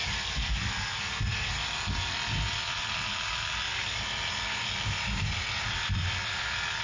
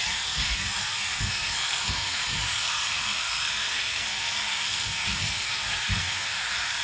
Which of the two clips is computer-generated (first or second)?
second